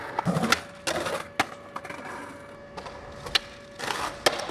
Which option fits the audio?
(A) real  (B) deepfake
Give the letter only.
A